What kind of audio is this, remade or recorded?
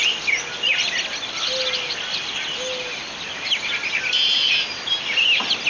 recorded